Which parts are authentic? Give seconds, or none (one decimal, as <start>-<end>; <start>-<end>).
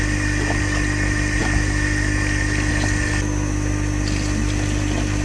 0.0-5.2